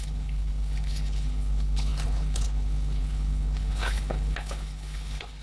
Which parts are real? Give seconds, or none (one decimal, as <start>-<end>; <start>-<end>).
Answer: none